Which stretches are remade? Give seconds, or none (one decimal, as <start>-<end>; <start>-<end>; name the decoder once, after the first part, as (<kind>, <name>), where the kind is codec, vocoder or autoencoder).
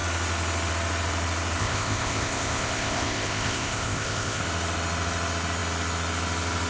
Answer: 1.6-4.4 (codec, ZipCodec)